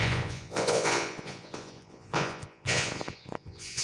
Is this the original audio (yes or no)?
no